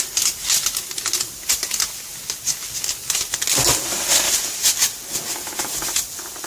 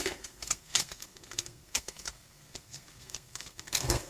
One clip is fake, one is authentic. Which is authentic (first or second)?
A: first